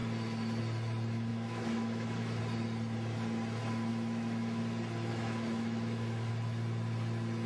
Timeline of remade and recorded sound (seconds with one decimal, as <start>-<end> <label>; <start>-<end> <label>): 0.0-1.3 recorded; 1.3-2.4 remade; 2.4-3.9 recorded; 3.9-4.6 remade; 4.6-5.1 recorded; 5.1-6.3 remade; 6.3-7.5 recorded